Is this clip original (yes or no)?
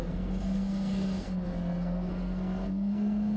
no